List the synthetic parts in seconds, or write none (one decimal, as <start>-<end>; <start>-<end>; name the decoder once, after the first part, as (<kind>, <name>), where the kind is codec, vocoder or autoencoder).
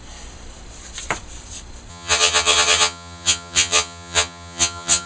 1.9-5.1 (vocoder, HiFi-GAN)